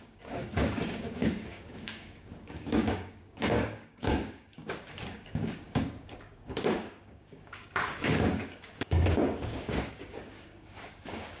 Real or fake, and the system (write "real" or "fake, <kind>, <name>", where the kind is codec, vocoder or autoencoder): fake, codec, DAC